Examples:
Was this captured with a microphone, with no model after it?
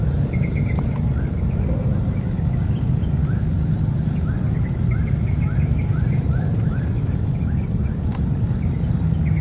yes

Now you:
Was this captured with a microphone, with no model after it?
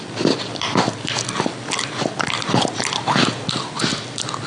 yes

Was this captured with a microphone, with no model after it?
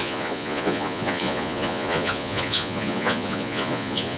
no